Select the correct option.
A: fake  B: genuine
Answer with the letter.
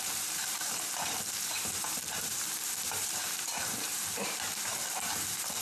A